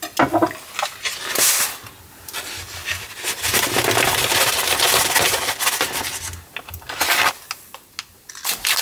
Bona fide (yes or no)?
yes